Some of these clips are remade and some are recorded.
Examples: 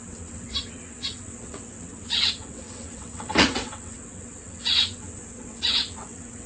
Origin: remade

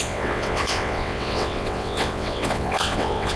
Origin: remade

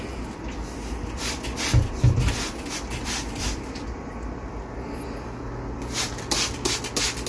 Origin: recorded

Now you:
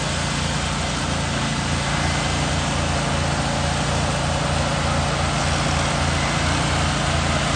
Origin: recorded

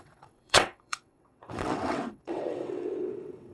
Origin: remade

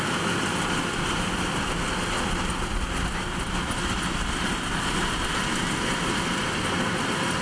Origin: recorded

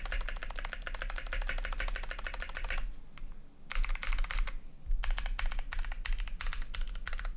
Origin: recorded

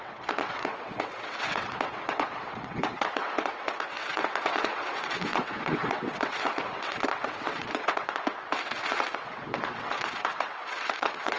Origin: remade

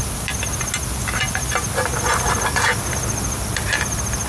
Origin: recorded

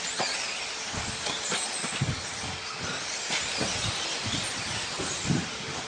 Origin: recorded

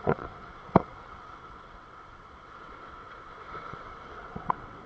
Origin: remade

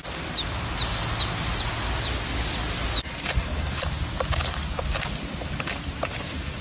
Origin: recorded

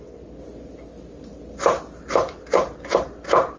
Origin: recorded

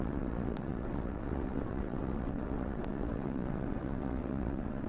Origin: remade